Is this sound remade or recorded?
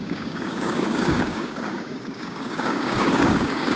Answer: remade